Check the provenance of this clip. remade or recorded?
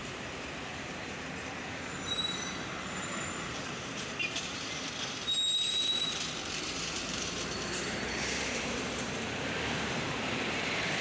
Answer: remade